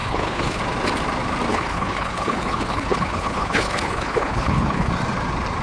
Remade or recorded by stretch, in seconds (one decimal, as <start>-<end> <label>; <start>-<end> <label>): 0.0-0.6 remade; 0.6-1.5 recorded; 1.5-4.9 remade; 4.9-5.6 recorded